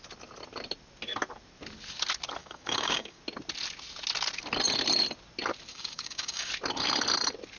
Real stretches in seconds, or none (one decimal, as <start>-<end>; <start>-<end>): 0.0-2.4; 3.2-5.7; 6.5-7.6